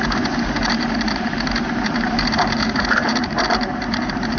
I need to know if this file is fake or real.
fake